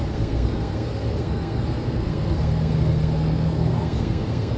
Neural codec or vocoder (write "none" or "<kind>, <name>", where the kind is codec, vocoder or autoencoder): codec, SNAC